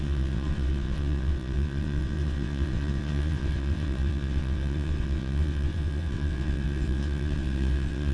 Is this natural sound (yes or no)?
no